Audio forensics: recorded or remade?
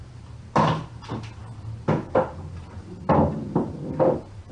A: recorded